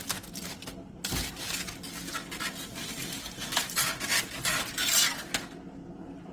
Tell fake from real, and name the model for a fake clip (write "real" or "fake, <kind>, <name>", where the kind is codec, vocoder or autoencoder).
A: real